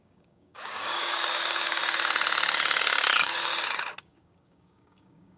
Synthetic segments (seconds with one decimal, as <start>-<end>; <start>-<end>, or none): 0.0-1.8; 2.8-3.5; 4.0-5.4